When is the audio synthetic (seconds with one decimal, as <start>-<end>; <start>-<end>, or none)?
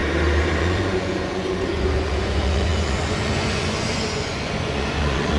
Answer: 0.6-5.4